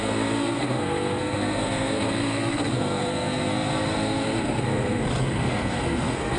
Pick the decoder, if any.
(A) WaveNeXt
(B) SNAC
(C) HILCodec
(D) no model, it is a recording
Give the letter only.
B